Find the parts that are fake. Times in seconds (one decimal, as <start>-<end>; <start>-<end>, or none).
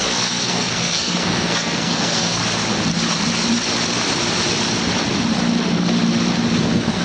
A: 0.0-2.4; 6.6-7.0